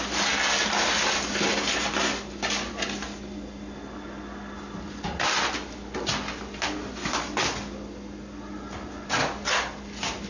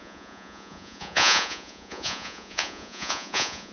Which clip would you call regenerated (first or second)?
second